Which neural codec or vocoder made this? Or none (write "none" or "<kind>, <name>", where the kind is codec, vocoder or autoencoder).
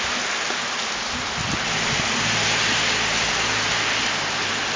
none